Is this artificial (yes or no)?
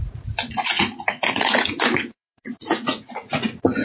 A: yes